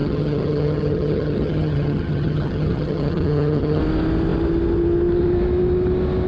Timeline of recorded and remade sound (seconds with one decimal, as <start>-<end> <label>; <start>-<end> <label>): 0.0-3.8 remade; 3.8-6.3 recorded